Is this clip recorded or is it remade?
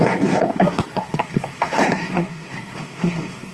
remade